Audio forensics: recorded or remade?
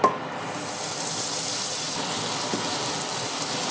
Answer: recorded